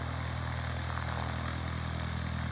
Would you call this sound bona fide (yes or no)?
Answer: yes